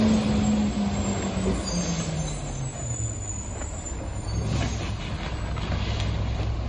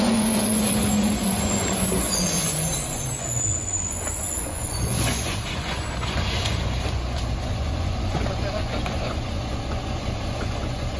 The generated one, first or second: second